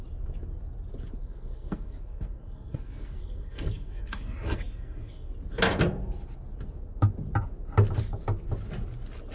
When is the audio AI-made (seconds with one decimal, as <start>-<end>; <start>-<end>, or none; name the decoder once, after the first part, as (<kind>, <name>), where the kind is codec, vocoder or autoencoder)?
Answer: 1.2-5.3 (codec, SNAC)